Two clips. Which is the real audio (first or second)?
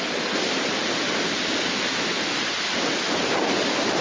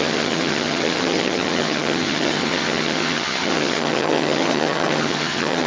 first